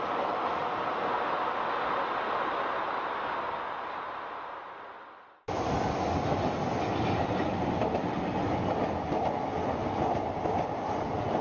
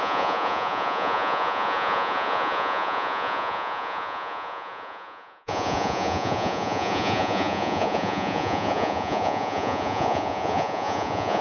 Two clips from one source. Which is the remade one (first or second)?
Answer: second